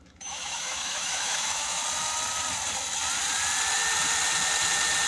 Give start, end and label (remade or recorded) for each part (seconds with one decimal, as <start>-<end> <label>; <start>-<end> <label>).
0.0-1.8 remade; 1.8-5.1 recorded